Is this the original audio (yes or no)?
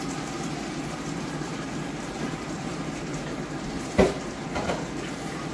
no